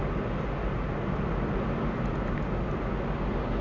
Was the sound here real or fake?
real